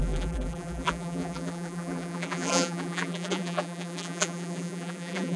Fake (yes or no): yes